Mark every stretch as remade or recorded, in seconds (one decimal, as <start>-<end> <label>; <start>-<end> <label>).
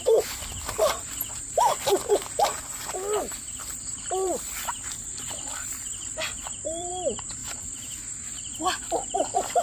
0.0-3.5 recorded; 3.5-6.9 remade; 6.9-7.4 recorded; 7.4-8.6 remade; 8.6-9.6 recorded